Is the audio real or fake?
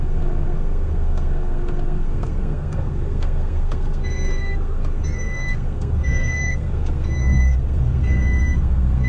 fake